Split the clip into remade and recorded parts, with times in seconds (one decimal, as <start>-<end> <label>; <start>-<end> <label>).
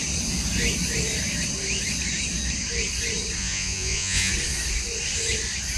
0.0-3.4 recorded; 3.4-4.3 remade; 4.3-5.8 recorded